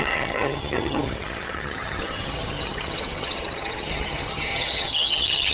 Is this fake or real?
fake